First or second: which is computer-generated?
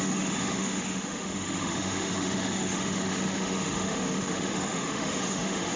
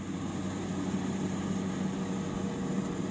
first